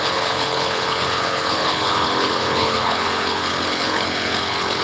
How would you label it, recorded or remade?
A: remade